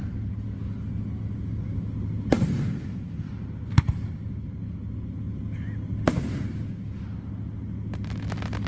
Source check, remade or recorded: recorded